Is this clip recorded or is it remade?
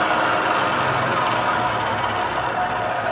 recorded